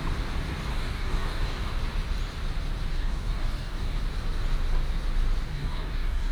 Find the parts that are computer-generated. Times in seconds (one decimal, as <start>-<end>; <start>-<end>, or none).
0.7-1.7; 2.9-4.0; 5.5-6.3